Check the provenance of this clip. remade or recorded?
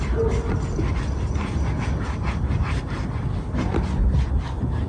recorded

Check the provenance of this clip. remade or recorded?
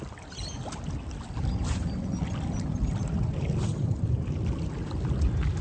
recorded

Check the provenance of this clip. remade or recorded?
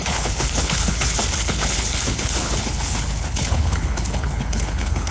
remade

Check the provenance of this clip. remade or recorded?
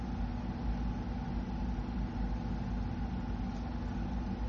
recorded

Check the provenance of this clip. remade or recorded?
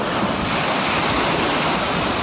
recorded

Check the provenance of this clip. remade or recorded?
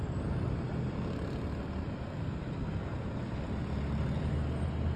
recorded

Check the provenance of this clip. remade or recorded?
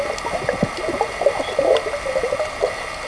recorded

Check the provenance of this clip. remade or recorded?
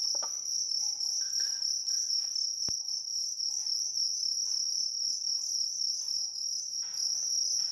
recorded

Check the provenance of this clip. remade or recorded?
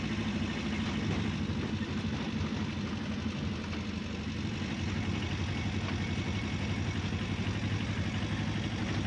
recorded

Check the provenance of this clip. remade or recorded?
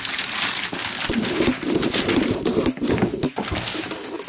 recorded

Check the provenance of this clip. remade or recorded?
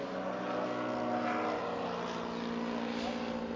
recorded